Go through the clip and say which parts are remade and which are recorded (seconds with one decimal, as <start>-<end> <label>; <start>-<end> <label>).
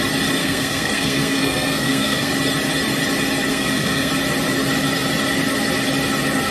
0.0-0.4 recorded; 0.4-2.3 remade; 2.3-3.5 recorded; 3.5-4.1 remade; 4.1-6.5 recorded